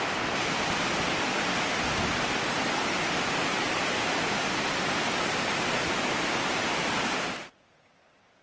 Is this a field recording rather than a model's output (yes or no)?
yes